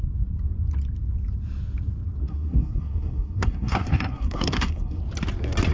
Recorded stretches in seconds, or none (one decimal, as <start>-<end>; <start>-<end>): 0.0-2.2; 5.0-5.7